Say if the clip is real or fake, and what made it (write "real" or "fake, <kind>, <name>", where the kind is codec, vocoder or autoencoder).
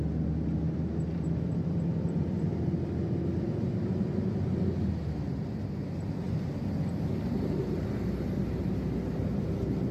real